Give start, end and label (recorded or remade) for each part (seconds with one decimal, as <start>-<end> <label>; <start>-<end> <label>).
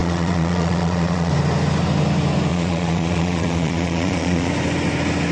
0.0-1.3 remade; 1.3-2.5 recorded; 2.5-4.5 remade; 4.5-5.3 recorded